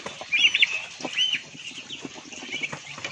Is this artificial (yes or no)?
no